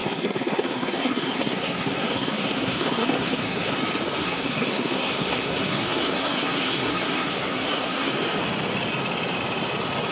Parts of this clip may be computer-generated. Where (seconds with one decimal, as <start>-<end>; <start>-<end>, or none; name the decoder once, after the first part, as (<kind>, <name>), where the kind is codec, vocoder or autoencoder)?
0.0-3.8 (codec, SNAC); 4.2-8.1